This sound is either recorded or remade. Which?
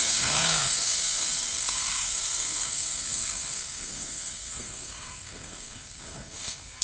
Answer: remade